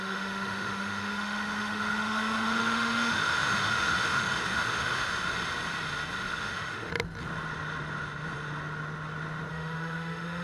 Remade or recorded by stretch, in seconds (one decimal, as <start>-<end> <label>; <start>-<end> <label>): 0.0-5.1 remade; 5.1-6.3 recorded; 6.3-6.9 remade; 6.9-9.5 recorded; 9.5-10.4 remade